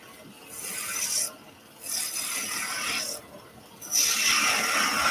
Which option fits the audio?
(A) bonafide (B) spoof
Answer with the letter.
A